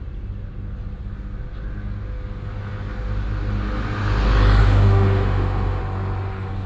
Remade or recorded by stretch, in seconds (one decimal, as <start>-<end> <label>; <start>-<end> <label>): 0.0-4.6 recorded; 4.6-5.8 remade; 5.8-6.7 recorded